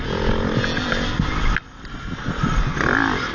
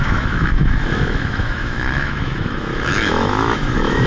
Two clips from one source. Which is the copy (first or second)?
second